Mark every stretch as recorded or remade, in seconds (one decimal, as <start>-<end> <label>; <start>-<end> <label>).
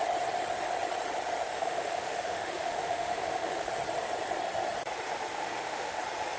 0.0-1.5 recorded; 1.5-3.7 remade; 3.7-5.3 recorded; 5.3-6.0 remade; 6.0-6.4 recorded